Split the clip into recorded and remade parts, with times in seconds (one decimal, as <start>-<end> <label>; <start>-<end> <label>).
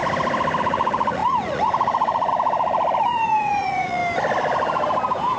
0.0-0.6 recorded; 0.6-4.0 remade; 4.0-5.4 recorded